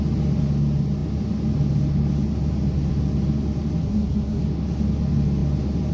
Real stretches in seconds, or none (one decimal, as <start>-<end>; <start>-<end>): 0.0-3.8; 4.4-5.9